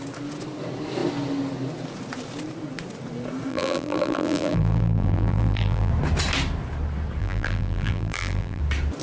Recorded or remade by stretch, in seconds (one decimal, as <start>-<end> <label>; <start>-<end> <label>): 0.0-3.5 recorded; 3.5-5.9 remade; 5.9-7.2 recorded; 7.2-8.6 remade; 8.6-9.0 recorded